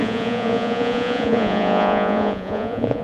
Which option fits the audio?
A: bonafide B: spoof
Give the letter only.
B